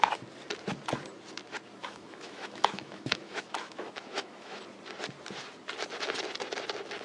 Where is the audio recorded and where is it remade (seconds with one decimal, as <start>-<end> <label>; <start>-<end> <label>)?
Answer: 0.0-1.8 recorded; 1.8-4.6 remade; 4.6-7.0 recorded